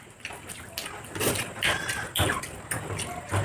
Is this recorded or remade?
recorded